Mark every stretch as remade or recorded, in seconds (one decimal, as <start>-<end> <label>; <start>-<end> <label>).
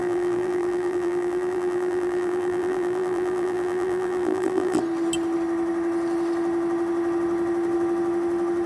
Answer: 0.0-4.8 remade; 4.8-8.7 recorded